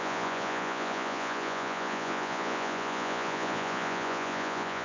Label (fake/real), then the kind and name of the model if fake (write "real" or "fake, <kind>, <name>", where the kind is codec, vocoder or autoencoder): fake, vocoder, Vocos